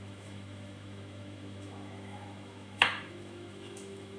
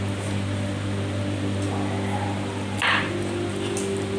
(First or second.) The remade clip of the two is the first